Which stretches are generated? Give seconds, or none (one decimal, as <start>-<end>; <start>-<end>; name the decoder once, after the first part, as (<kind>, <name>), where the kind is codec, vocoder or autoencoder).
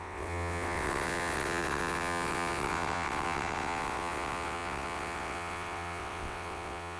0.0-7.0 (vocoder, WaveNeXt)